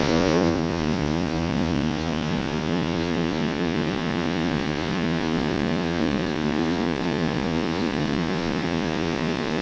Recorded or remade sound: remade